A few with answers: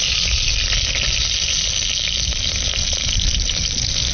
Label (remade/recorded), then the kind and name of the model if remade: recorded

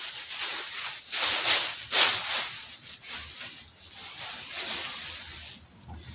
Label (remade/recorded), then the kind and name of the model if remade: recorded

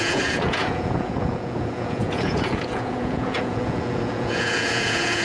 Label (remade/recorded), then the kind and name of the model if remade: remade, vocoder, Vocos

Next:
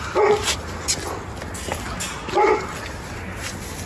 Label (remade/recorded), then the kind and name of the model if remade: recorded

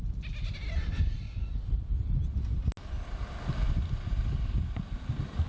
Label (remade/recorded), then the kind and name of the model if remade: recorded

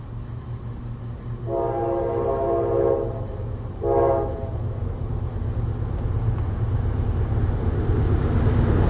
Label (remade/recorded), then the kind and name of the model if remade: recorded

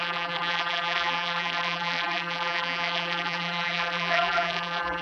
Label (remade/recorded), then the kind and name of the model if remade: remade, vocoder, BigVGAN v2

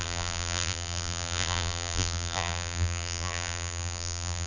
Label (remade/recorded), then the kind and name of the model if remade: remade, vocoder, BigVGAN v2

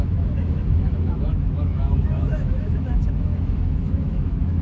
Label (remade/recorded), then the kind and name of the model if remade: remade, autoencoder, DAC-VAE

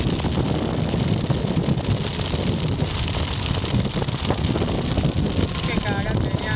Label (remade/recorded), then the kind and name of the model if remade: recorded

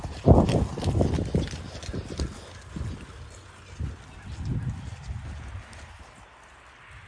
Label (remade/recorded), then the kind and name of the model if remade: recorded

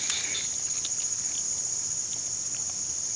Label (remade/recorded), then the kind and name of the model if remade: recorded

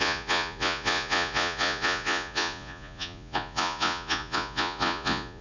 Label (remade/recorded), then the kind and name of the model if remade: remade, vocoder, Vocos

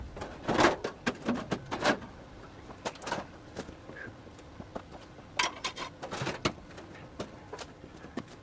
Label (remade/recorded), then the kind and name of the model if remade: recorded